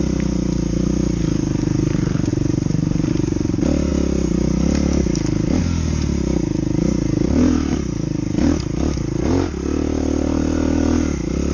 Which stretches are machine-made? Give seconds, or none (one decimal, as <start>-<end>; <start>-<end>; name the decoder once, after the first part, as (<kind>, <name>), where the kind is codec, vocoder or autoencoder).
none